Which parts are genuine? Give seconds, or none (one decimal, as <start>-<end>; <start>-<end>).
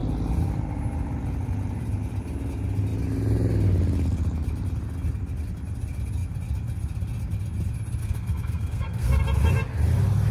0.0-8.0; 9.2-10.3